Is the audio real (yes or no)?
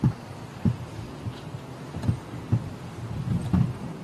yes